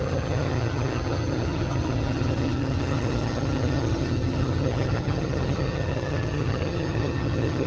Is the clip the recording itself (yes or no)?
no